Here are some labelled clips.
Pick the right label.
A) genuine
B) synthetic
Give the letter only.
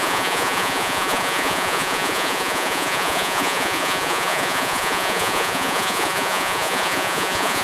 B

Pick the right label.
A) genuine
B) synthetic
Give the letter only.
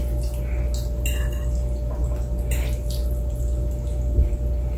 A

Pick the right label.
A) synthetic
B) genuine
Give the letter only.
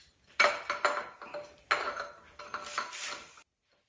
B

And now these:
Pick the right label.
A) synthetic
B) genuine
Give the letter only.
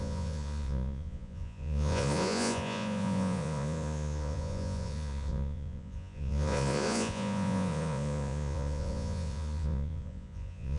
A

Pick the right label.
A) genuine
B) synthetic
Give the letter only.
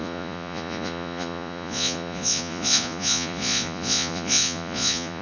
B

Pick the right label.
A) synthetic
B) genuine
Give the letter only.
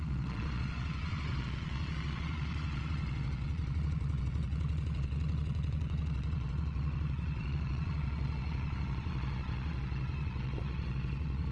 A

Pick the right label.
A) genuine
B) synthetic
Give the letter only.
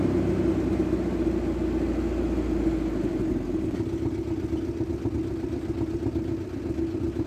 A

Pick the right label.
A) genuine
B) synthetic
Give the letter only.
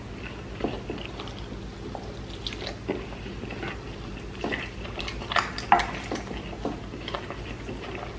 A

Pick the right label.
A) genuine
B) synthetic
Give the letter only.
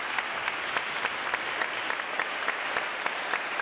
A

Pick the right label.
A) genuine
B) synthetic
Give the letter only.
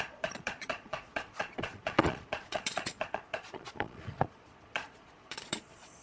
B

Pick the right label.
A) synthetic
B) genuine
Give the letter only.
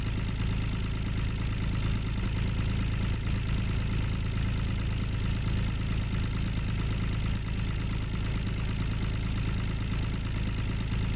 B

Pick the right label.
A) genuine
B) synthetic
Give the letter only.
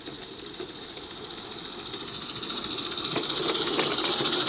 A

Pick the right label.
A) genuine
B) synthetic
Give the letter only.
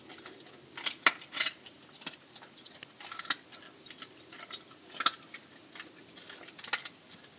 A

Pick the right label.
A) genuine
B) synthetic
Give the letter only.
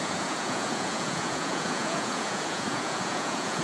B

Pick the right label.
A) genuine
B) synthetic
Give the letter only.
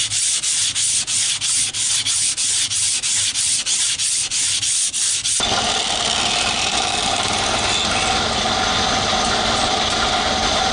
A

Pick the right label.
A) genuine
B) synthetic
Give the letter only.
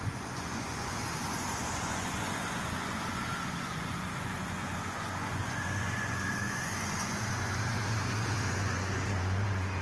B